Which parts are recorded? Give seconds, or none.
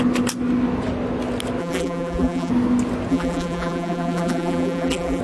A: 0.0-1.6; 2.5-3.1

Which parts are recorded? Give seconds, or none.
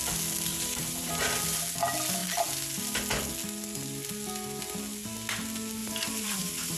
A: 0.0-0.5; 1.1-5.8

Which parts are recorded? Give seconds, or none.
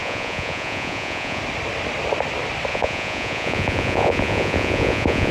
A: 1.4-2.7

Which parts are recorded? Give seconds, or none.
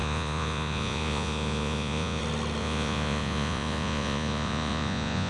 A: 2.2-2.6